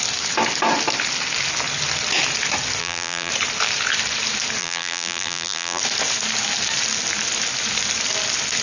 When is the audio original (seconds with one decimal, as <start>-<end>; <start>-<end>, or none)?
0.0-2.8; 3.3-4.6; 5.8-8.6